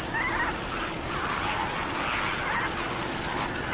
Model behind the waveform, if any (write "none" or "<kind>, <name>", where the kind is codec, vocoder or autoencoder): none